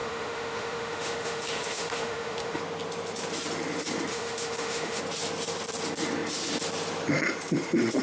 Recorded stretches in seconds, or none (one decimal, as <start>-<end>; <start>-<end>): 2.6-4.1; 5.0-8.0